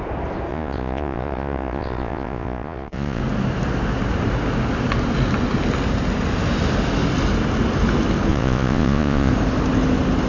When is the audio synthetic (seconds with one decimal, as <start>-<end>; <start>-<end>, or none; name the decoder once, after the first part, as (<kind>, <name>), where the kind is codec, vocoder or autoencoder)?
0.5-3.2 (vocoder, Vocos); 8.3-9.3